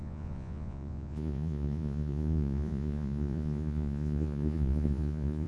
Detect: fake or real fake